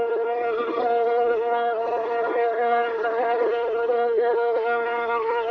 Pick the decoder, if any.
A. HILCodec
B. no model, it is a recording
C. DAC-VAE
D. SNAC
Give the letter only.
D